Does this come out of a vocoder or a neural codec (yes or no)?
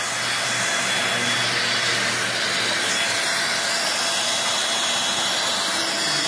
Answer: no